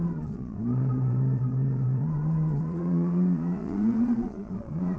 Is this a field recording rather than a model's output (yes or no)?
no